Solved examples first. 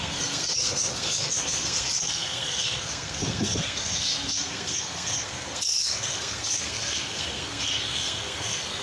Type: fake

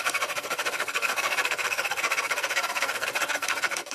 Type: fake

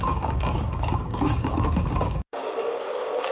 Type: fake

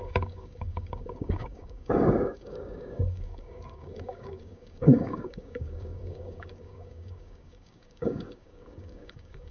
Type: fake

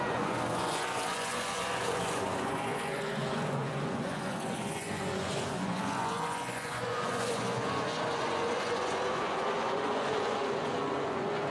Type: fake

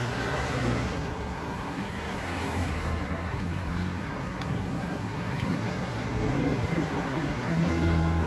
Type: fake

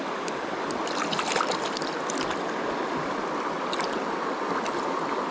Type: real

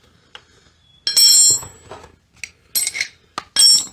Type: real